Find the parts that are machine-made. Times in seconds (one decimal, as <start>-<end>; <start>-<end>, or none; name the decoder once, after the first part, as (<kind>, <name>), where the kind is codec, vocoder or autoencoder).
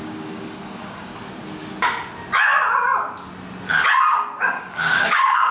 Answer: 0.0-1.1 (codec, DAC); 4.4-5.5